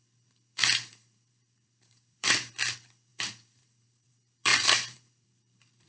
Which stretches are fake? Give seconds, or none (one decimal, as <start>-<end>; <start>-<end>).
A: 0.9-2.5; 3.1-4.1; 4.5-5.4

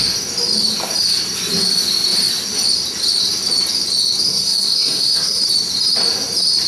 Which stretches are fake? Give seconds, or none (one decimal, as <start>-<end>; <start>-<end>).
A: 4.3-5.4